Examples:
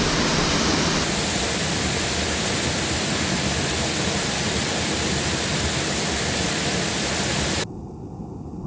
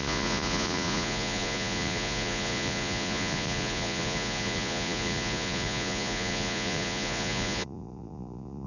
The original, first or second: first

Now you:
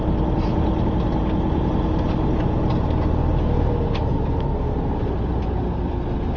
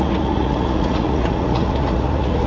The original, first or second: first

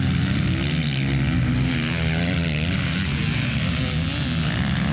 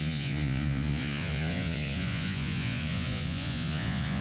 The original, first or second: first